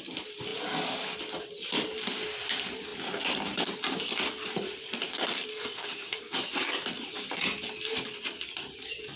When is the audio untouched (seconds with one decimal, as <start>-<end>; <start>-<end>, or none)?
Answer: 0.0-5.5; 6.2-9.2